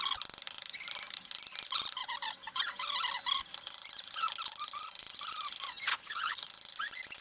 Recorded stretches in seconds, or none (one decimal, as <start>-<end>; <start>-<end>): 0.0-5.9; 6.5-7.2